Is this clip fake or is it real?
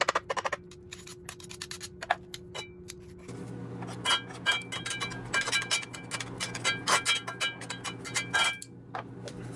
real